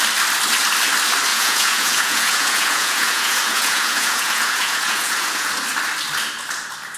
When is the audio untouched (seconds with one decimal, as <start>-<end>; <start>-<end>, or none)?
0.0-1.3; 5.5-7.0